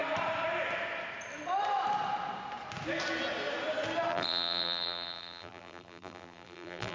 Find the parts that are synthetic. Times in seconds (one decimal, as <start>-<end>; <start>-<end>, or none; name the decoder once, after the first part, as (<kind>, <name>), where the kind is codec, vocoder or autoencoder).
4.1-6.9 (vocoder, BigVGAN v2)